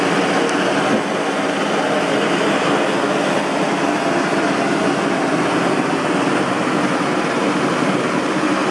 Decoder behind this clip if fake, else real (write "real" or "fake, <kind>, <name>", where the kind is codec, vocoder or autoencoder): real